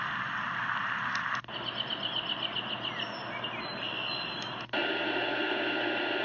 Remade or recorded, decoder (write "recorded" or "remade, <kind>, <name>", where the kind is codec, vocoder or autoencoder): recorded